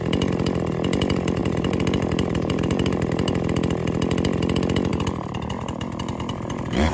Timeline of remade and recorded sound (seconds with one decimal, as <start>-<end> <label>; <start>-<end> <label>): 0.0-1.4 recorded; 1.4-3.3 remade; 3.3-4.9 recorded; 4.9-6.9 remade

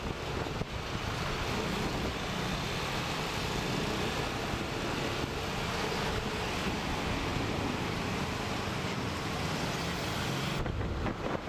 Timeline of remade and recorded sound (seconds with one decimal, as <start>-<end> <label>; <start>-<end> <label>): 0.0-11.5 recorded

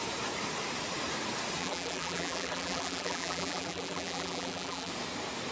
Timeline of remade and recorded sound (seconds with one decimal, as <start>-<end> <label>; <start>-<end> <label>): 0.0-1.6 recorded; 1.6-4.9 remade; 4.9-5.5 recorded

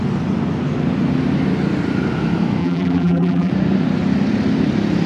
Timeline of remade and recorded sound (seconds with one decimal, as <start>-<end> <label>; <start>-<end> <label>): 0.0-2.6 recorded; 2.6-3.5 remade; 3.5-5.1 recorded

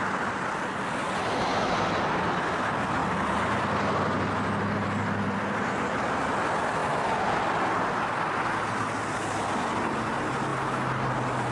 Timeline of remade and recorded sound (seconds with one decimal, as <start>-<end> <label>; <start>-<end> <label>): 0.0-11.5 recorded

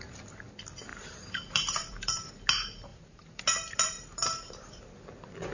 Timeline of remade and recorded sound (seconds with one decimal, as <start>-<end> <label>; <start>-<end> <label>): 0.0-0.9 recorded; 0.9-2.3 remade; 2.3-2.9 recorded; 2.9-4.8 remade; 4.8-5.5 recorded